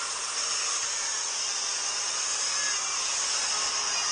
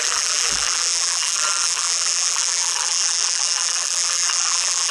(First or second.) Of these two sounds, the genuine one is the first